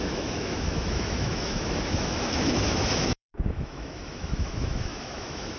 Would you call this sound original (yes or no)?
no